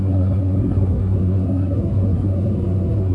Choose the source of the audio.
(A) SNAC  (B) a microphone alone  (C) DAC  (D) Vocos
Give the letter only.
A